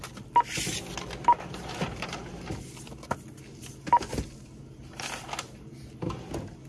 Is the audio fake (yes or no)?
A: no